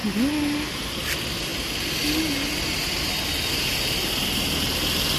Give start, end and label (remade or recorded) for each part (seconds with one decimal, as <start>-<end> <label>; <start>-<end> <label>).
0.0-5.2 recorded